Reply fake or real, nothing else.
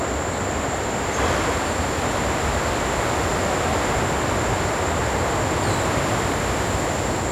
real